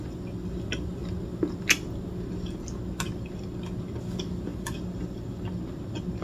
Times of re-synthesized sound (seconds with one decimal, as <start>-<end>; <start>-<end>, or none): 4.5-5.5